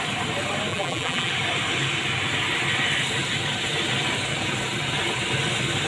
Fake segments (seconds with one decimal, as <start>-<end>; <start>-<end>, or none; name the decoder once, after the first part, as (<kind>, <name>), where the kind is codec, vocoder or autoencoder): 0.7-1.3 (vocoder, BigVGAN v2)